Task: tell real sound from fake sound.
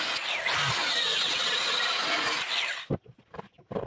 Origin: real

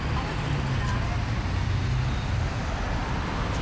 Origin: real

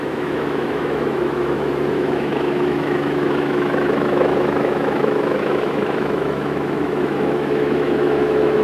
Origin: fake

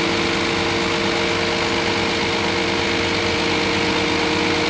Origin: real